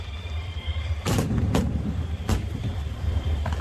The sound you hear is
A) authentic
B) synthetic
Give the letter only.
B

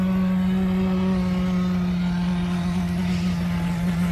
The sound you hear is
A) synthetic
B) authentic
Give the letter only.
B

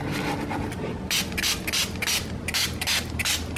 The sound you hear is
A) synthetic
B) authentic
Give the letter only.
B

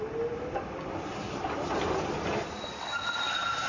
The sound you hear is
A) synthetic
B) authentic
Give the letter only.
B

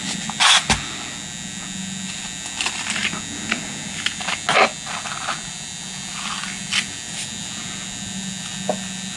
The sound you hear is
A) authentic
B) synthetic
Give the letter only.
A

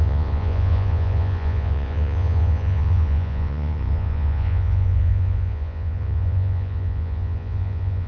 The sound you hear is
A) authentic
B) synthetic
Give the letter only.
B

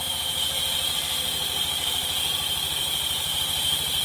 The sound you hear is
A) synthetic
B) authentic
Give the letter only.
A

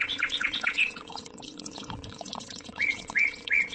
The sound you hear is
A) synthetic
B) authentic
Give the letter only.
A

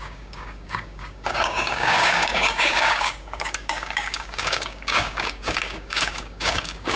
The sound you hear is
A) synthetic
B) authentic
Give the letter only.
A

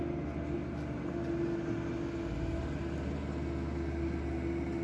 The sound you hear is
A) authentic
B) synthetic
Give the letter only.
A